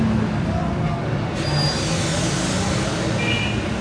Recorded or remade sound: recorded